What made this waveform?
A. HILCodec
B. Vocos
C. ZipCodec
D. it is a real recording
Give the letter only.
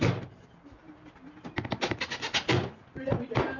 D